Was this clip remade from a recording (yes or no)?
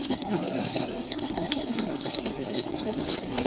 yes